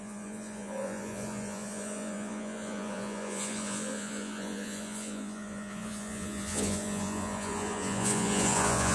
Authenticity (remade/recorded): remade